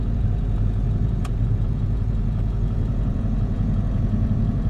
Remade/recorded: remade